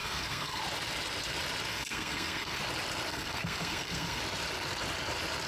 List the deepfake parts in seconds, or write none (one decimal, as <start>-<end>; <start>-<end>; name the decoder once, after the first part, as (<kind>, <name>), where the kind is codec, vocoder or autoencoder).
0.0-0.6 (codec, SNAC); 1.7-2.6; 3.1-4.2